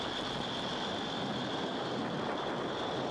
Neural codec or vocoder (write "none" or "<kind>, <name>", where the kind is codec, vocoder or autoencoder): none